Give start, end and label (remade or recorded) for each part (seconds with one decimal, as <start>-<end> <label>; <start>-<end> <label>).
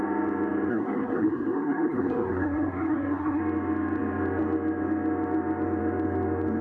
0.0-0.7 recorded; 0.7-3.4 remade; 3.4-6.6 recorded